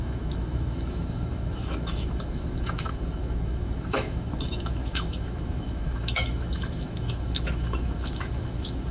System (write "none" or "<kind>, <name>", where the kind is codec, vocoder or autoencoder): autoencoder, DAC-VAE